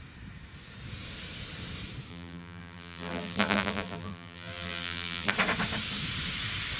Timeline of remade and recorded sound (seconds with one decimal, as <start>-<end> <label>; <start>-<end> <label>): 0.0-2.1 recorded; 2.1-5.3 remade; 5.3-6.8 recorded